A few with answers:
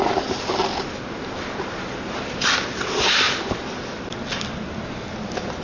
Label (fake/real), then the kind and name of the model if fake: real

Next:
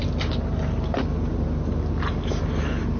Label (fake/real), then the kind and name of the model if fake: real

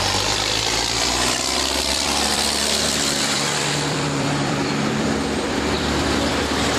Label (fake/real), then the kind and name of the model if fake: fake, vocoder, BigVGAN v2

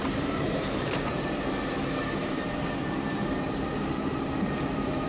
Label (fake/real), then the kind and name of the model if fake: fake, vocoder, BigVGAN v2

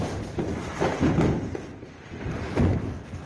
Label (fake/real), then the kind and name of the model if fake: fake, vocoder, BigVGAN v2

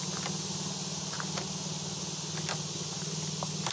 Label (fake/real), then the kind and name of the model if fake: real